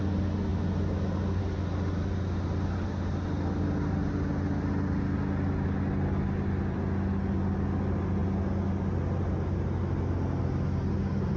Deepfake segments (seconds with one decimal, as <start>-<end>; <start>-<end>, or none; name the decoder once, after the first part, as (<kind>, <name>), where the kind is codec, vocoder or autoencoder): none